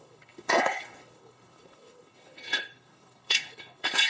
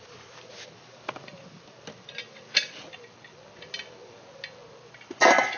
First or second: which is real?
second